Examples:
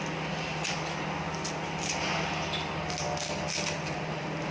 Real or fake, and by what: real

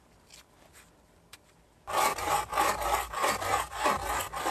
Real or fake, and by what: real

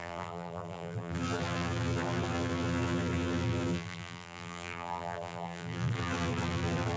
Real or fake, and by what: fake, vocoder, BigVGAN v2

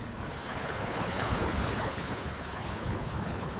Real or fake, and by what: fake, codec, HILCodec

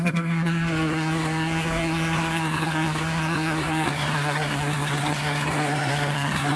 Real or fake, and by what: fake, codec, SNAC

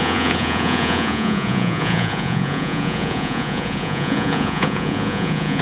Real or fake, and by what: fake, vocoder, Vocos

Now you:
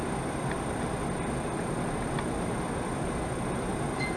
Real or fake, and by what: real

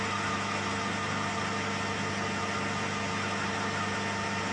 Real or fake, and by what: real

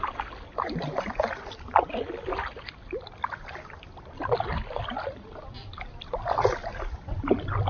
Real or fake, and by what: real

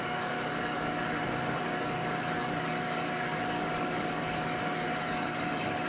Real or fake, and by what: fake, codec, DAC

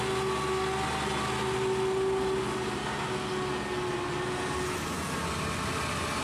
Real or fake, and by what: real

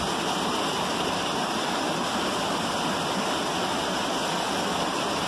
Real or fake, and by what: real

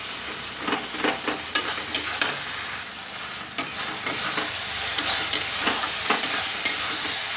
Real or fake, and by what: real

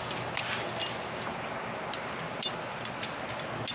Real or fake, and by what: real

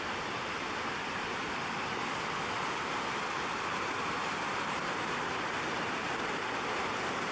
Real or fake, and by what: real